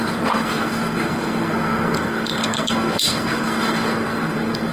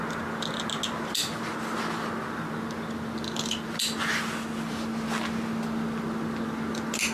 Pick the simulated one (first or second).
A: first